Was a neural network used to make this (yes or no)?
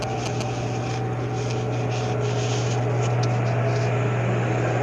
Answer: no